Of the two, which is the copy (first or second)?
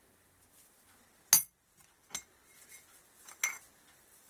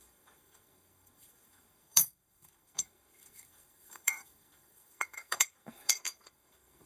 second